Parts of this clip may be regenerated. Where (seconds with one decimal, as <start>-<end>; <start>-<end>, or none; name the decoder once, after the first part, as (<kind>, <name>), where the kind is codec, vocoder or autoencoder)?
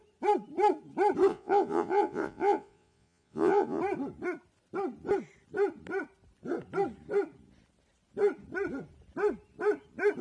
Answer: 1.3-3.8 (vocoder, Vocos)